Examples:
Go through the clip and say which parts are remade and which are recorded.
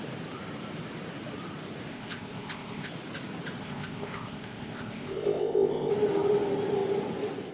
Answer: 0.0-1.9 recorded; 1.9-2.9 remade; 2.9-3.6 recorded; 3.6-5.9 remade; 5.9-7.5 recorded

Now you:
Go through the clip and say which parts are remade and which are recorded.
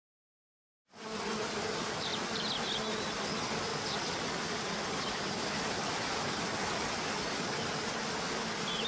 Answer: 0.0-3.7 recorded; 3.7-7.5 remade; 7.5-8.9 recorded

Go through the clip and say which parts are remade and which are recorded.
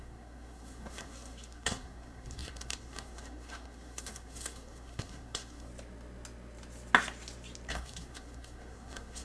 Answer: 0.0-5.7 remade; 5.7-7.7 recorded; 7.7-9.2 remade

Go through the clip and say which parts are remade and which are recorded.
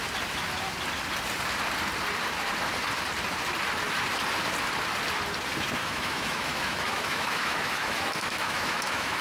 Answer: 0.0-5.8 recorded; 5.8-9.2 remade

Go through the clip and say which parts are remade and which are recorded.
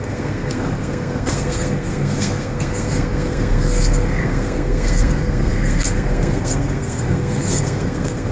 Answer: 0.0-8.3 remade